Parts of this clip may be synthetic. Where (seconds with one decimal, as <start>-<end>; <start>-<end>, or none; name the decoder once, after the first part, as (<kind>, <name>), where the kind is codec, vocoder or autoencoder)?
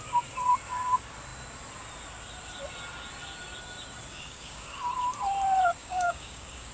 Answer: 4.1-4.8 (codec, DAC); 5.8-6.7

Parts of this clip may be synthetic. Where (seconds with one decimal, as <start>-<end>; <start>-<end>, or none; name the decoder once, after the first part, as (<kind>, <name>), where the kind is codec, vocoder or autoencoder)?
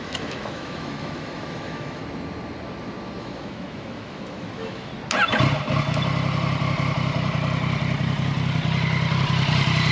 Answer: 0.0-2.0 (autoencoder, DAC-VAE); 3.2-4.9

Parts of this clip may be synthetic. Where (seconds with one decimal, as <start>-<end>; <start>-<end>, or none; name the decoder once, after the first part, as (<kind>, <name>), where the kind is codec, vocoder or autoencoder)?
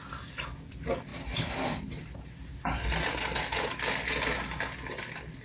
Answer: 1.1-2.6 (vocoder, BigVGAN v2)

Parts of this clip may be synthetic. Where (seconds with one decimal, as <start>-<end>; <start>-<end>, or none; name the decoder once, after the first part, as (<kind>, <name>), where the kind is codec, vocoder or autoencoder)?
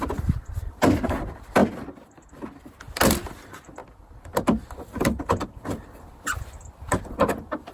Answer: none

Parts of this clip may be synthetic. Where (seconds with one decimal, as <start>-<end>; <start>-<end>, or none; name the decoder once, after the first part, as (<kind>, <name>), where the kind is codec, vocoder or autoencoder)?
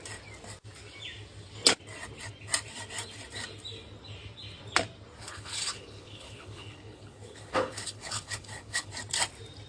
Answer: 5.2-8.9 (codec, HILCodec)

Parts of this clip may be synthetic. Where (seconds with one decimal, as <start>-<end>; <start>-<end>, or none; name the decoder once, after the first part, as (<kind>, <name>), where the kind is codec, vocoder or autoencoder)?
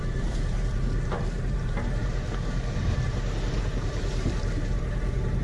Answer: 0.0-5.4 (vocoder, BigVGAN v2)